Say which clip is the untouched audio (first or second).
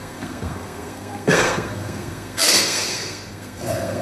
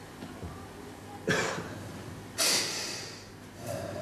second